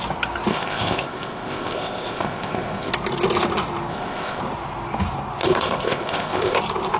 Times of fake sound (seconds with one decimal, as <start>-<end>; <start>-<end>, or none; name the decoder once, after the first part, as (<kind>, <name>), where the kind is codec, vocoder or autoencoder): 0.5-2.9 (codec, ZipCodec); 3.9-4.4; 5.4-6.6